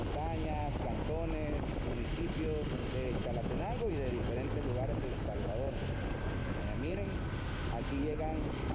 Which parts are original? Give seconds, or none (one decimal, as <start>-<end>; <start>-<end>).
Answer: 0.0-8.7